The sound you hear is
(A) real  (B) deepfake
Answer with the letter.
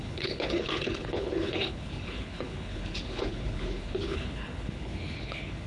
B